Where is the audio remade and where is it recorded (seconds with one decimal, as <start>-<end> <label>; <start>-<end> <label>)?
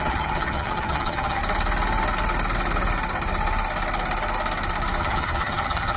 0.0-1.4 remade; 1.4-5.0 recorded; 5.0-6.0 remade